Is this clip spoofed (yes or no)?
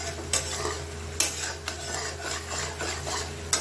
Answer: no